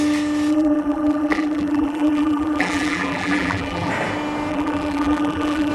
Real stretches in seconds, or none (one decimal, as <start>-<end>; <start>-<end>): 0.0-0.5; 3.9-4.5